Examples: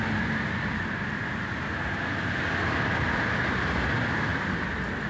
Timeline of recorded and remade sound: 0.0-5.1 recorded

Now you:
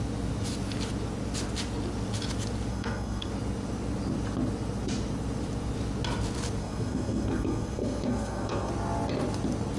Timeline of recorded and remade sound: 0.0-2.7 recorded; 2.7-3.3 remade; 3.3-6.6 recorded; 6.6-8.7 remade; 8.7-9.8 recorded